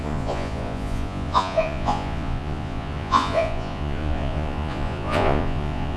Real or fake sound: fake